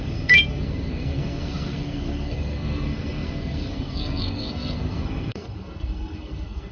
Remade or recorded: remade